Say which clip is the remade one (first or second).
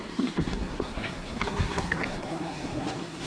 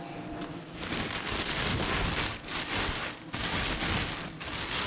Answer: first